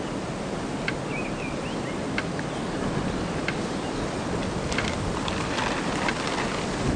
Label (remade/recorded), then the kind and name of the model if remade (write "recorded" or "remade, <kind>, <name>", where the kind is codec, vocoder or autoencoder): recorded